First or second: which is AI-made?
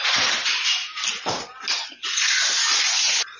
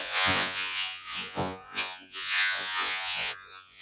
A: second